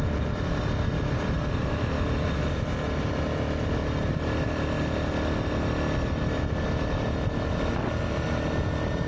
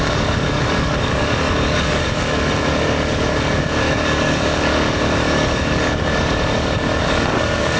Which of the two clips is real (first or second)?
first